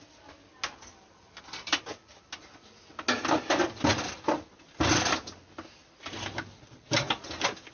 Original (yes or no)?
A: yes